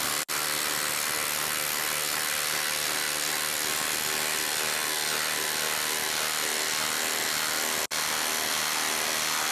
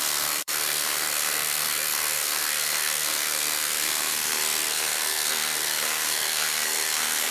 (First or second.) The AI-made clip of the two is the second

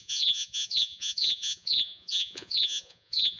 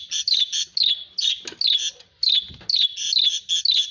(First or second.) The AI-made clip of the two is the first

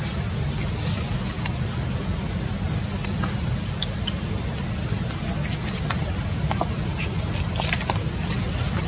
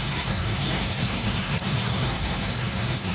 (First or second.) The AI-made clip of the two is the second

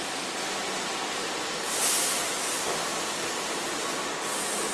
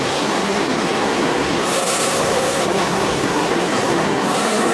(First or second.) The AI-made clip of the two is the second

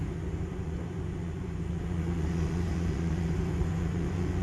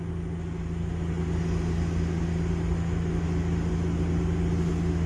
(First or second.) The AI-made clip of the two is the first